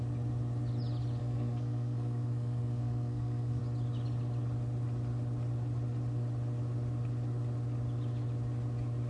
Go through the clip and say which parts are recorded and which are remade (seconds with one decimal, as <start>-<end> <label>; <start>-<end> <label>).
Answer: 0.0-1.2 recorded; 1.2-3.6 remade; 3.6-9.1 recorded